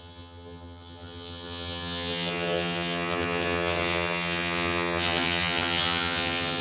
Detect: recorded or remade remade